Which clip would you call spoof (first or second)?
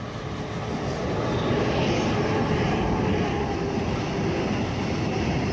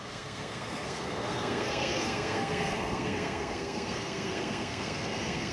second